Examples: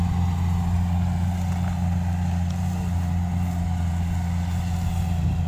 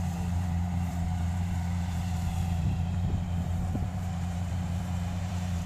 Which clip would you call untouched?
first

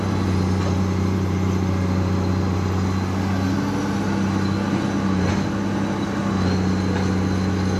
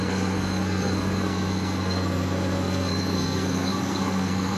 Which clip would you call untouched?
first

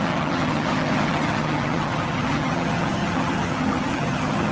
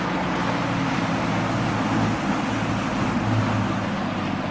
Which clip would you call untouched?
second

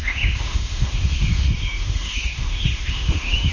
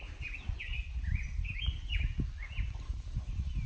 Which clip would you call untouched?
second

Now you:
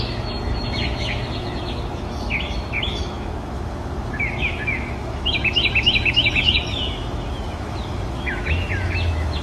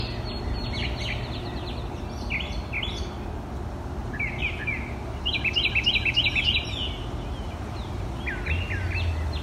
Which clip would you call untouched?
second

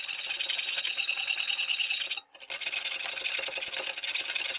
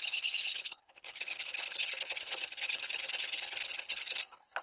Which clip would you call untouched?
first